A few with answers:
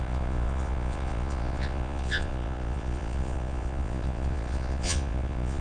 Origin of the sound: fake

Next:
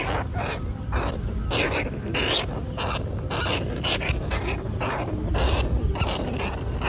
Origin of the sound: real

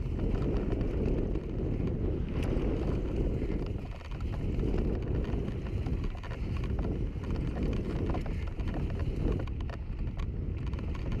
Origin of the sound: real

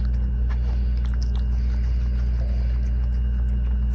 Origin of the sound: real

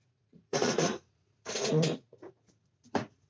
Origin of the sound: fake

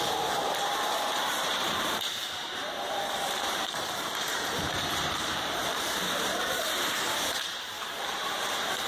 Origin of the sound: fake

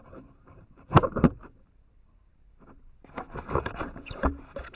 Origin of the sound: fake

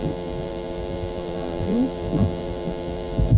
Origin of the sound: fake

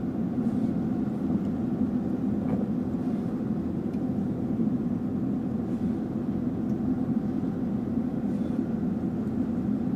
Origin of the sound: real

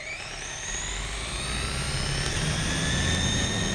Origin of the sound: real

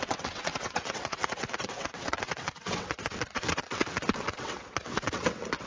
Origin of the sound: fake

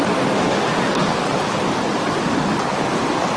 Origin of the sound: real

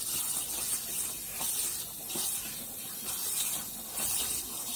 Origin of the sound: real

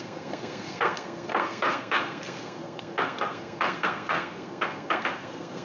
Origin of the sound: fake